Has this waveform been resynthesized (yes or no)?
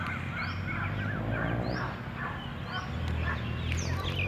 no